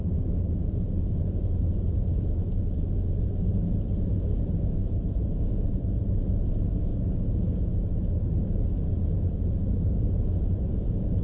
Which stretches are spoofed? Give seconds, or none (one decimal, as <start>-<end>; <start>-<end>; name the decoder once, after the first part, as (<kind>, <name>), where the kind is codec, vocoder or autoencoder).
0.0-6.9 (vocoder, BigVGAN v2); 7.5-11.2